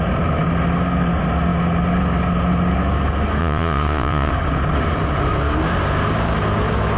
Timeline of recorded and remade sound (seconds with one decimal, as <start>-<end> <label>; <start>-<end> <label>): 0.0-3.4 recorded; 3.4-4.3 remade; 4.3-7.0 recorded